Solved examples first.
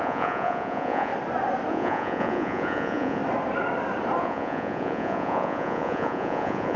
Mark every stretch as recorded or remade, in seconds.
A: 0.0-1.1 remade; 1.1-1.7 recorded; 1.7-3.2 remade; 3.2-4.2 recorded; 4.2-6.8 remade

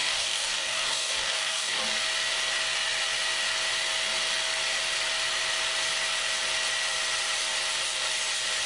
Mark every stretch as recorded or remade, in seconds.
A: 0.0-1.8 remade; 1.8-8.7 recorded

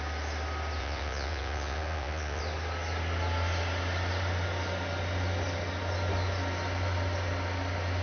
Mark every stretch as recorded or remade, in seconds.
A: 0.0-0.8 recorded; 0.8-2.4 remade; 2.4-8.0 recorded